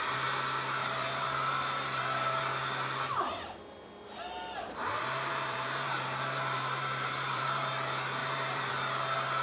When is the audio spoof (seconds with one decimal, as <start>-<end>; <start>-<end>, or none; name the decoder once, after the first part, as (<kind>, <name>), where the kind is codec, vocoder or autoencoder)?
0.8-2.4 (vocoder, BigVGAN v2); 4.6-7.7; 8.2-8.7